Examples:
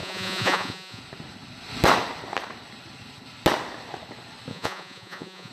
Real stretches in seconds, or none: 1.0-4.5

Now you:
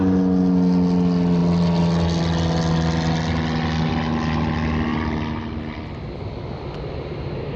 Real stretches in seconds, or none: 0.0-7.6

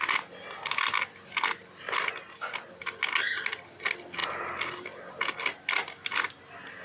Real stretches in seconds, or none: 0.0-6.8

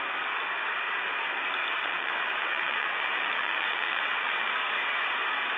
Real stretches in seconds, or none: 0.0-1.8; 4.5-5.6

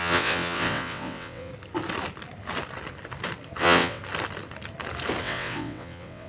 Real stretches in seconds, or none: 1.5-3.6; 4.0-5.2

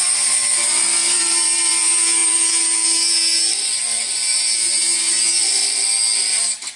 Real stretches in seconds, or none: 0.0-0.8; 1.7-6.8

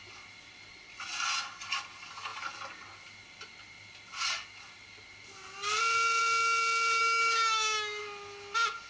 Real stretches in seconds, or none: 0.0-7.0; 8.0-8.9

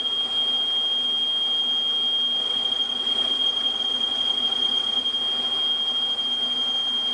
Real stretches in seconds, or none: 0.0-2.4; 5.0-7.1